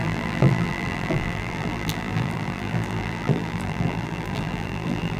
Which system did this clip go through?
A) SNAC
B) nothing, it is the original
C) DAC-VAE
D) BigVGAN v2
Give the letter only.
D